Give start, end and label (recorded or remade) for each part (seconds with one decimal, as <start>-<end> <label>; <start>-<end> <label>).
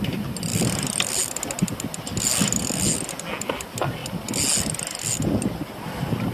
0.0-6.3 recorded